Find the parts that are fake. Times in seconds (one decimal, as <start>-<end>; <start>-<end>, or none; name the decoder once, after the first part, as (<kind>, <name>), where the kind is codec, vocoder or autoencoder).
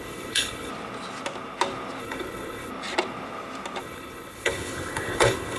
0.0-0.7 (codec, HILCodec); 2.0-2.7; 3.8-5.6